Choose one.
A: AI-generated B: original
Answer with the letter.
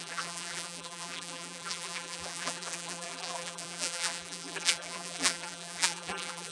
A